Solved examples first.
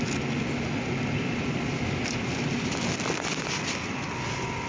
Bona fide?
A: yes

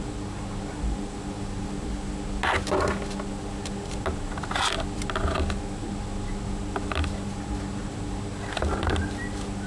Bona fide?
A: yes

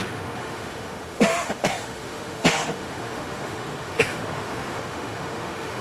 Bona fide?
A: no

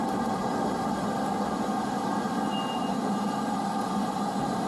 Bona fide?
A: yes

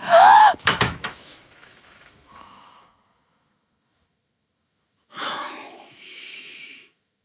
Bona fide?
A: no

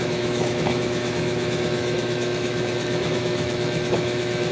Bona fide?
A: no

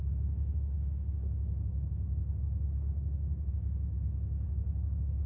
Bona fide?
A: no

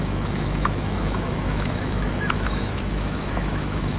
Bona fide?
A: no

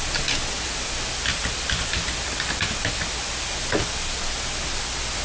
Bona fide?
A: yes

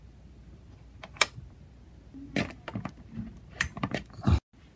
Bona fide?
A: yes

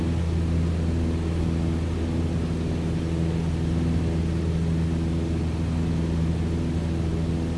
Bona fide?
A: yes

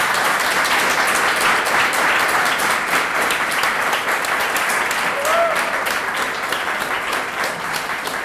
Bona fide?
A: yes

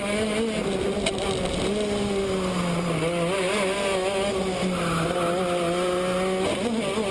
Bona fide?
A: yes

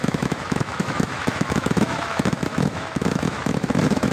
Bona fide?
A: no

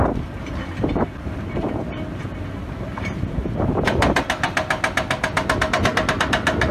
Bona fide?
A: yes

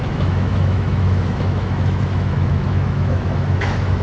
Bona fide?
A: no